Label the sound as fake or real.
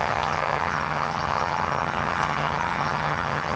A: fake